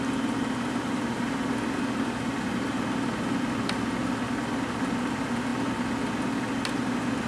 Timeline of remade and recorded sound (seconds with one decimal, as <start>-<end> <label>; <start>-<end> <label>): 0.0-7.3 recorded